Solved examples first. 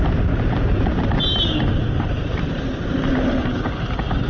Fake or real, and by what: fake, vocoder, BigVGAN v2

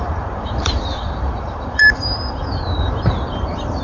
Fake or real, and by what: fake, vocoder, BigVGAN v2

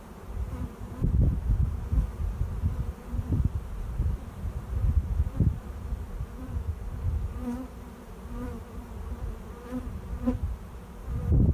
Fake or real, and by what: fake, vocoder, BigVGAN v2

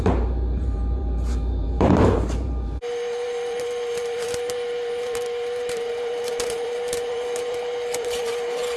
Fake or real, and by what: fake, vocoder, BigVGAN v2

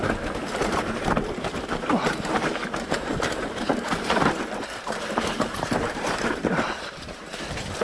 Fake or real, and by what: fake, vocoder, BigVGAN v2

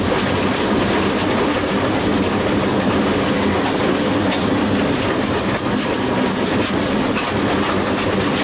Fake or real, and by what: real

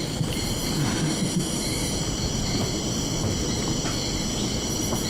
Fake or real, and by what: fake, vocoder, BigVGAN v2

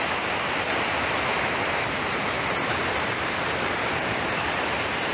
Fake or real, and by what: fake, vocoder, BigVGAN v2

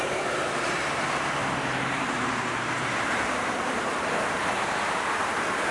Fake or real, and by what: fake, vocoder, BigVGAN v2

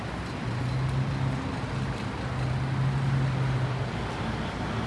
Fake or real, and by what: real